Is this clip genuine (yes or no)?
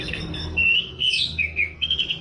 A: no